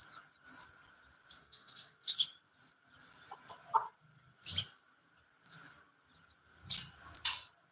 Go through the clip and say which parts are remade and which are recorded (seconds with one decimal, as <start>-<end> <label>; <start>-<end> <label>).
0.0-1.4 recorded; 1.4-2.2 remade; 2.2-7.7 recorded